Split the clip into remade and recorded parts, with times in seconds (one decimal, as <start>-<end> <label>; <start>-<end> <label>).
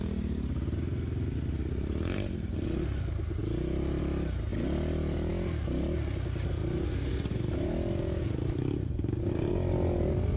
0.0-10.4 recorded